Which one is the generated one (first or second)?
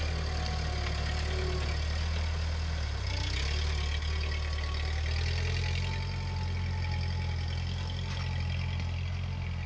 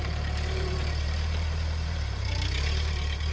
second